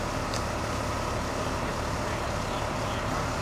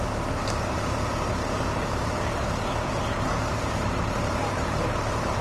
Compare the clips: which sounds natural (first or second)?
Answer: first